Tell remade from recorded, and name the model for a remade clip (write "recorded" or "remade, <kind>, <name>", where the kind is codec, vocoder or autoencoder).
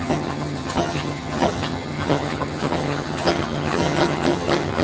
remade, vocoder, HiFi-GAN